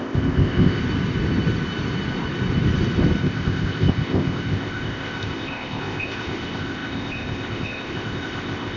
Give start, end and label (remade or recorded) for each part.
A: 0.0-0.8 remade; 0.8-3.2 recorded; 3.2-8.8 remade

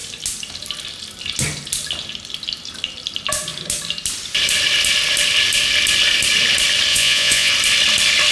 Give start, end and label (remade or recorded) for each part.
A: 0.0-6.9 recorded; 6.9-7.5 remade; 7.5-8.3 recorded

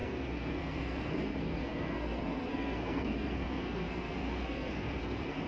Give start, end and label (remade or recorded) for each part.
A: 0.0-5.5 remade

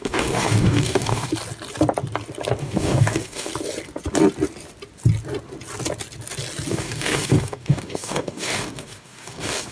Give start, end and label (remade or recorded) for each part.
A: 0.0-1.3 remade; 1.3-2.6 recorded; 2.6-3.5 remade; 3.5-6.7 recorded; 6.7-9.7 remade

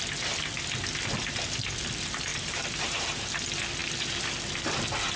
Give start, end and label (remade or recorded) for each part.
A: 0.0-2.3 recorded; 2.3-3.4 remade; 3.4-5.2 recorded